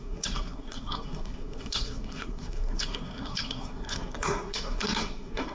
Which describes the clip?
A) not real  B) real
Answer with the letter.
A